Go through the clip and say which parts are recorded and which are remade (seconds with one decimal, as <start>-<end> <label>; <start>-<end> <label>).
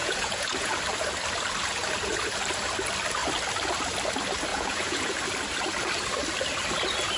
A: 0.0-0.8 remade; 0.8-4.5 recorded; 4.5-5.2 remade; 5.2-7.2 recorded